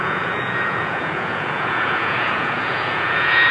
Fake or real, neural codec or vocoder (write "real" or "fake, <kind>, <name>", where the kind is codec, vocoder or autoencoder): fake, vocoder, Vocos